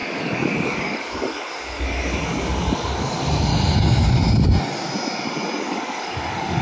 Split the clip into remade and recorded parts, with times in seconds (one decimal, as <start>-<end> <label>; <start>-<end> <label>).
0.0-3.5 remade; 3.5-5.6 recorded; 5.6-6.6 remade